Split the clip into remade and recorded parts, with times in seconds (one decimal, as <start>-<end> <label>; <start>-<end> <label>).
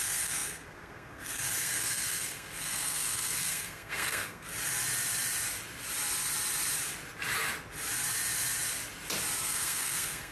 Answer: 0.0-4.5 remade; 4.5-9.4 recorded; 9.4-10.3 remade